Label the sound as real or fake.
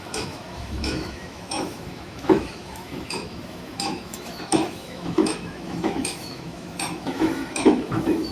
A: fake